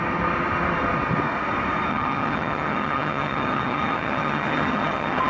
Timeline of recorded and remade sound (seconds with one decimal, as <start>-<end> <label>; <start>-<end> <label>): 0.0-1.9 recorded; 1.9-5.3 remade